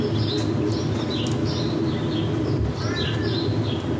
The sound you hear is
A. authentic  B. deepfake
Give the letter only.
A